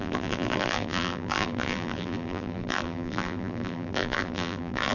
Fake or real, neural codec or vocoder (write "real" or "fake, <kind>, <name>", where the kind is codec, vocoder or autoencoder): fake, vocoder, BigVGAN v2